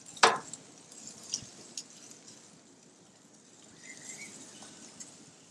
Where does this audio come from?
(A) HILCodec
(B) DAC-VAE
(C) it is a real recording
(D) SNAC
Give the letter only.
C